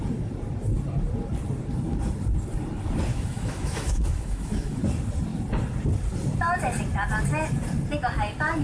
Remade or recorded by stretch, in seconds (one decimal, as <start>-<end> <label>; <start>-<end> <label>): 0.0-3.1 recorded; 3.1-4.8 remade; 4.8-8.6 recorded